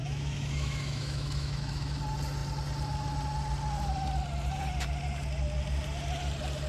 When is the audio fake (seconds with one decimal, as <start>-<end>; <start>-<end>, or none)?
0.0-2.0